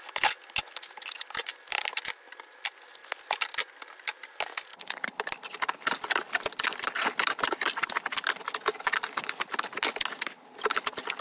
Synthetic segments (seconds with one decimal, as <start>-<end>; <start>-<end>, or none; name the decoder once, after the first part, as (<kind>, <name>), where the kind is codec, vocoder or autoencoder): none